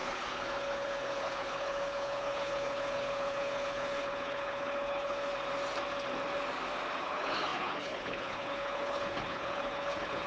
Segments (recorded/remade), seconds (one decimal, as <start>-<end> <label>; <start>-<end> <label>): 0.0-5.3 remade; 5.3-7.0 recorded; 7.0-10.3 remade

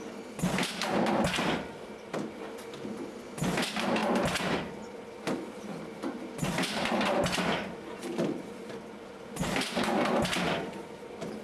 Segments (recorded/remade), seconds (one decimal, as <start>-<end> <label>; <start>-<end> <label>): 0.0-11.4 recorded

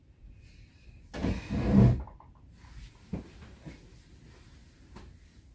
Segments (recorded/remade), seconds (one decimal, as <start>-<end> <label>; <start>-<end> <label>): 0.0-5.5 recorded

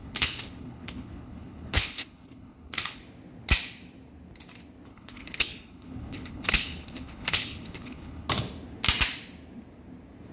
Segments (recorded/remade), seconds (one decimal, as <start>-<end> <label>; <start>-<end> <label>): 0.0-3.0 remade; 3.0-4.9 recorded; 4.9-8.3 remade; 8.3-10.3 recorded

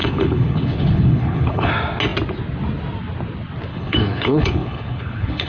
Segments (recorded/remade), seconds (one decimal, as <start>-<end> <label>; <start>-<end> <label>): 0.0-1.7 remade; 1.7-3.7 recorded; 3.7-5.5 remade

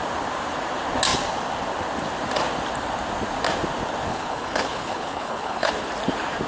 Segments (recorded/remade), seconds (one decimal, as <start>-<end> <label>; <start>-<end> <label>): 0.0-4.1 recorded; 4.1-5.7 remade; 5.7-6.5 recorded

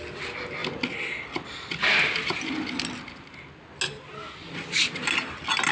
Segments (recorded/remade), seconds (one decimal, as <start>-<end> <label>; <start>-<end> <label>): 0.0-5.7 recorded

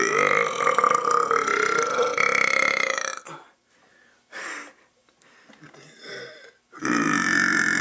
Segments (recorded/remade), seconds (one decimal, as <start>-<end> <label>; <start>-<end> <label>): 0.0-7.8 recorded